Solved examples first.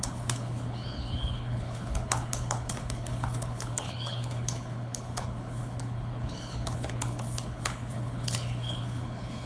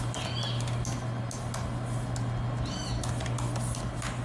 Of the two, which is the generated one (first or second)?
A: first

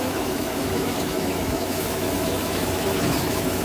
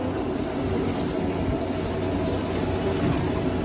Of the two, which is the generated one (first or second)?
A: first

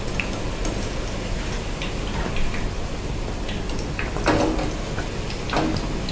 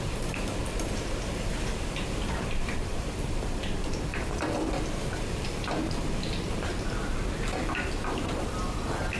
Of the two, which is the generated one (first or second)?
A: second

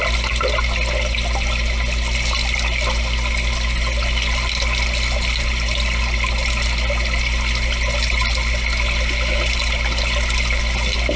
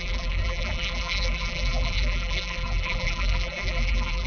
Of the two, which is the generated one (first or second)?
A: second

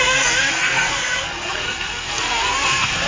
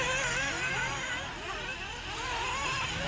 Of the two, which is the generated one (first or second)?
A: first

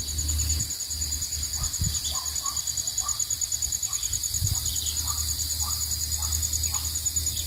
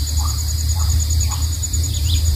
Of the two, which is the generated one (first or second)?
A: second